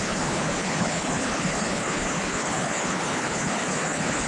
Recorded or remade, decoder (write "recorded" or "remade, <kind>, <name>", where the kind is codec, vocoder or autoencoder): remade, codec, HILCodec